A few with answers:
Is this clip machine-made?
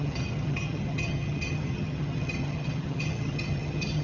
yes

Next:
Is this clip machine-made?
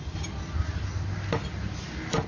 no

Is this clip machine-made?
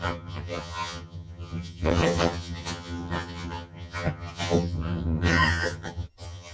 yes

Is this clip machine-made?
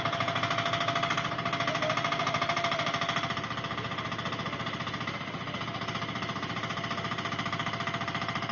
no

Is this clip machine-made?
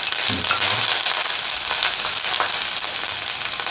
no